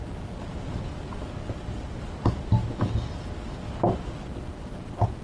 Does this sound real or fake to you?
real